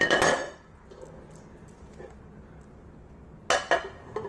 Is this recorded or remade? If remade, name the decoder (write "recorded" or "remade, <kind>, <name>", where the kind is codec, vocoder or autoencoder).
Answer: recorded